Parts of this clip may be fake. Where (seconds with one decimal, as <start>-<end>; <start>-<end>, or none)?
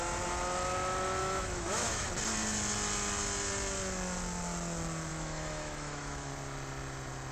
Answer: 1.2-2.1; 5.1-6.3